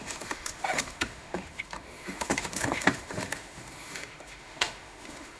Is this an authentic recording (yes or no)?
no